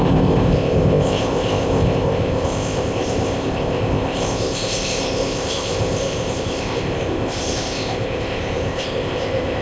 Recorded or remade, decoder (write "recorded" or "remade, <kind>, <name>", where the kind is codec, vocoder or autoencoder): remade, codec, ZipCodec